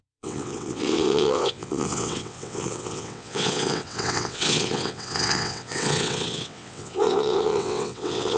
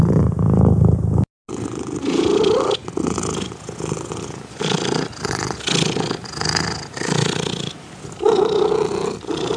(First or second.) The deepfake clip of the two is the first